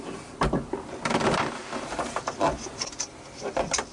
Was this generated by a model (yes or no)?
yes